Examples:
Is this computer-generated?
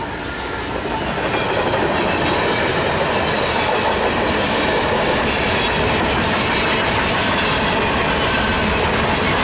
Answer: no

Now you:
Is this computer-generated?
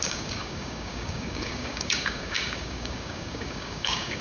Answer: yes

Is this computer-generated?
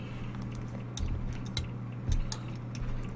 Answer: no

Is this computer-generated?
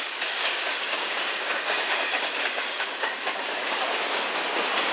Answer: yes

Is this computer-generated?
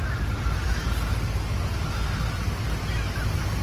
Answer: no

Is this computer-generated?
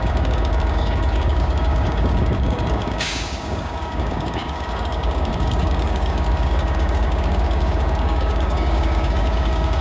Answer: yes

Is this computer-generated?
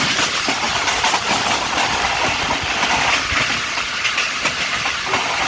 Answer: no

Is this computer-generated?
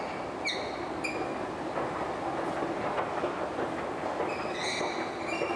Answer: no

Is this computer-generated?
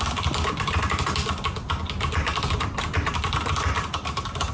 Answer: no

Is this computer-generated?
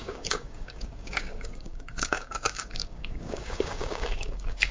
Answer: yes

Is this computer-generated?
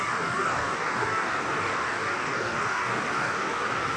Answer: yes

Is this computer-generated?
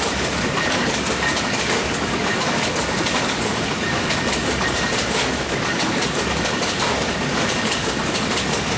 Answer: yes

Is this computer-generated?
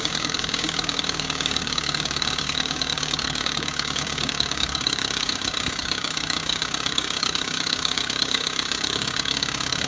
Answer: yes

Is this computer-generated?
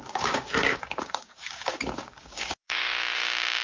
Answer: yes